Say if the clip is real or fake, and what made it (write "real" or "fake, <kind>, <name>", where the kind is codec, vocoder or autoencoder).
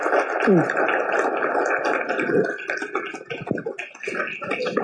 real